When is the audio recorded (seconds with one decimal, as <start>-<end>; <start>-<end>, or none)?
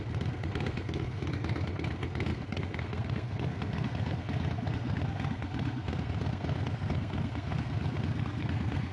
none